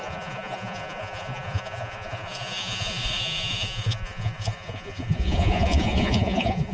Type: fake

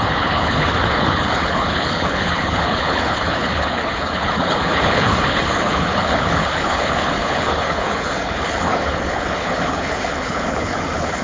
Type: fake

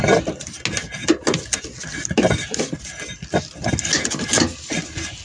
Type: real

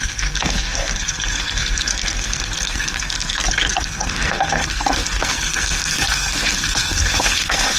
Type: fake